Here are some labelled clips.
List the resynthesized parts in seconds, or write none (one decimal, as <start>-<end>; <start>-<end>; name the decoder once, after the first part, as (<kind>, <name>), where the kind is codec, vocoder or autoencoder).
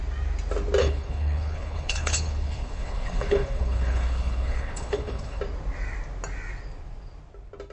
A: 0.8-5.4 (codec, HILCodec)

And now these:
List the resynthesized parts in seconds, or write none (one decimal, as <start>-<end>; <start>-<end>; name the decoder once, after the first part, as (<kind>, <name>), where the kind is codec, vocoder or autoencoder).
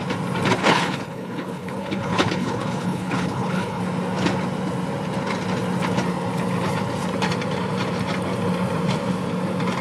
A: 0.6-3.8 (codec, HILCodec)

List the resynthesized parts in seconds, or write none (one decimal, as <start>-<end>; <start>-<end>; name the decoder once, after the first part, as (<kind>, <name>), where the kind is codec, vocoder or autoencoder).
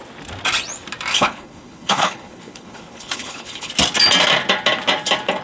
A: 1.1-3.7 (codec, HILCodec)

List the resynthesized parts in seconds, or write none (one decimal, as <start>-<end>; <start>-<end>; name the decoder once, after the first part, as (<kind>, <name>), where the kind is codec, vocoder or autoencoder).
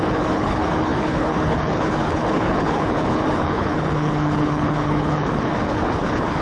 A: 0.0-6.4 (codec, HILCodec)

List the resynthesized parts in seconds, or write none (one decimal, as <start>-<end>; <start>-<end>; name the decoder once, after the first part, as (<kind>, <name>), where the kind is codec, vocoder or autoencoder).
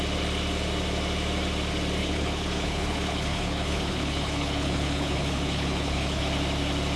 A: 2.0-6.2 (codec, HILCodec)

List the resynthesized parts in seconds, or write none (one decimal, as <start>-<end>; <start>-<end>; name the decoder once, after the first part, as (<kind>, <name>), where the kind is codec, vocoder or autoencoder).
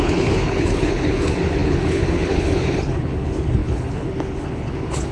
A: 0.0-5.1 (codec, HILCodec)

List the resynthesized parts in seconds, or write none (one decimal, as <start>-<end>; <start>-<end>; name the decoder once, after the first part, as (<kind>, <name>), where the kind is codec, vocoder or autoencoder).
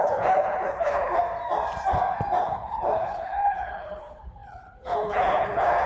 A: 0.0-1.2 (codec, HILCodec); 2.4-5.9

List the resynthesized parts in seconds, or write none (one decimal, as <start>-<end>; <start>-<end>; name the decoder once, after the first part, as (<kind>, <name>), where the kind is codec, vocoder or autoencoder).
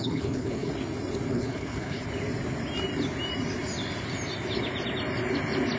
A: 0.0-0.7 (codec, HILCodec); 1.3-2.0